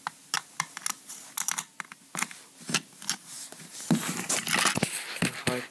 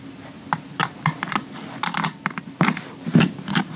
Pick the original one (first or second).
first